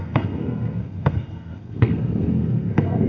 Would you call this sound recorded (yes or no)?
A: no